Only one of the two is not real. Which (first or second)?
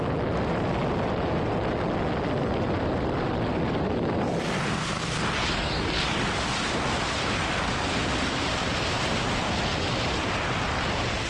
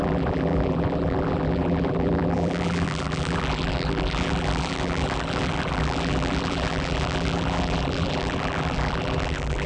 second